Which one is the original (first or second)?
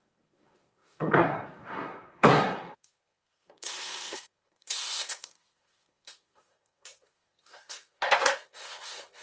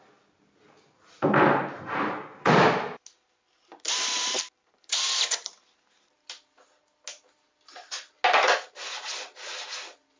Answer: second